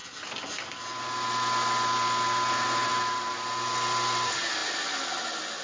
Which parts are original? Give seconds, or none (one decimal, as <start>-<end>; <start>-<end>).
0.0-5.6